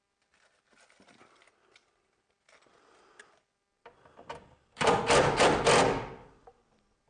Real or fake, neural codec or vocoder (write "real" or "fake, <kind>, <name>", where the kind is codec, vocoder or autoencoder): real